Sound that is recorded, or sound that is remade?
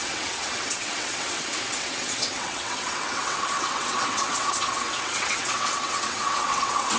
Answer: remade